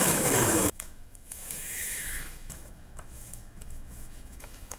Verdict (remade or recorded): remade